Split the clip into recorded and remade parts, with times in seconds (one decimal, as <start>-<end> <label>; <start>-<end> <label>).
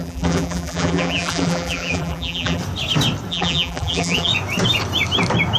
0.0-2.6 remade; 2.6-3.3 recorded; 3.3-4.3 remade; 4.3-5.6 recorded